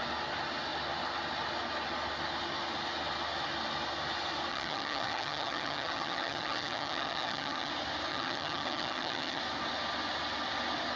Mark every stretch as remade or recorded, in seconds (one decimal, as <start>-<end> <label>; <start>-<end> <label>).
0.0-4.5 recorded; 4.5-7.7 remade; 7.7-8.1 recorded; 8.1-9.4 remade; 9.4-11.0 recorded